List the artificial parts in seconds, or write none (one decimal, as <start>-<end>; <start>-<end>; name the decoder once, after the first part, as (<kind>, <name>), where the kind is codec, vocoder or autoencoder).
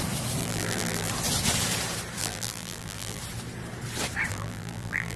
0.4-1.1 (vocoder, BigVGAN v2); 2.2-3.2; 4.3-5.2